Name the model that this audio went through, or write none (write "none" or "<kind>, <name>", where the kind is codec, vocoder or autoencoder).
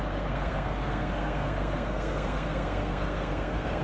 codec, SNAC